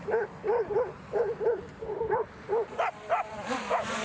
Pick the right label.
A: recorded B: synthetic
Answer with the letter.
B